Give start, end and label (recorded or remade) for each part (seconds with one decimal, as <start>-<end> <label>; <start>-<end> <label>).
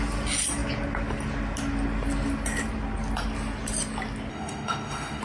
0.0-4.3 recorded; 4.3-5.2 remade